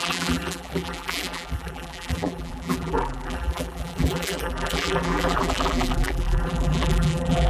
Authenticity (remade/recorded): remade